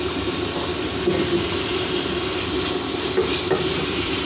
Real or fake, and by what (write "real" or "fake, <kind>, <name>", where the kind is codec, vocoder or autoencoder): fake, vocoder, BigVGAN v2